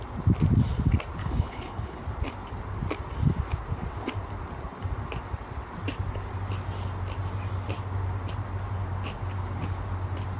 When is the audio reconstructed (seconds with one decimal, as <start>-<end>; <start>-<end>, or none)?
1.2-2.0